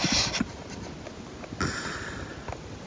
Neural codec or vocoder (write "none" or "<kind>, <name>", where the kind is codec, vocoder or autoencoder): none